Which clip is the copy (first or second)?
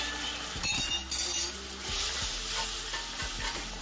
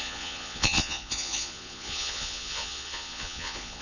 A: second